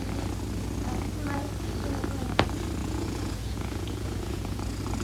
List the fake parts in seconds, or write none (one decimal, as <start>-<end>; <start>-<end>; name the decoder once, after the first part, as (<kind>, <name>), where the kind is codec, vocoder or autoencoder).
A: 2.8-4.6 (vocoder, Vocos)